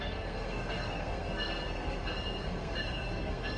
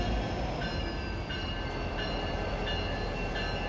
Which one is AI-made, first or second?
first